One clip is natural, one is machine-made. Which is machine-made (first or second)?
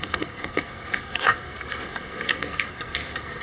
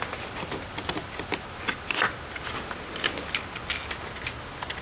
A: first